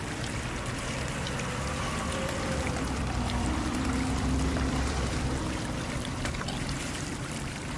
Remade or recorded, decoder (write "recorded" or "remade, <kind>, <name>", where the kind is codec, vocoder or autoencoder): remade, vocoder, BigVGAN v2